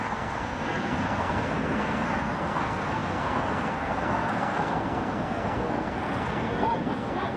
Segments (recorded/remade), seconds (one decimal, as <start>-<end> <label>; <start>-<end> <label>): 0.0-7.4 remade